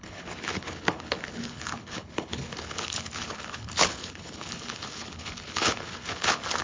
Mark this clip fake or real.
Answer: fake